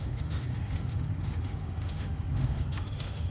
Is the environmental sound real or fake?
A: fake